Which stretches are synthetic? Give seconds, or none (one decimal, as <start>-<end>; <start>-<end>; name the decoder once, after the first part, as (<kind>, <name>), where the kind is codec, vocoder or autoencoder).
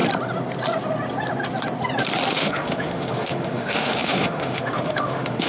2.3-5.5 (autoencoder, DAC-VAE)